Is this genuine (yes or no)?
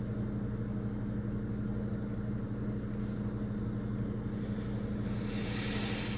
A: yes